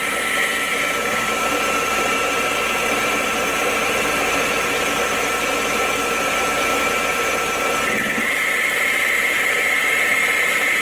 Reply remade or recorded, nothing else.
remade